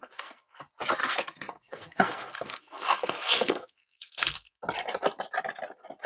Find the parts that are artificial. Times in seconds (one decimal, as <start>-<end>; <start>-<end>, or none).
0.0-0.6; 1.0-4.6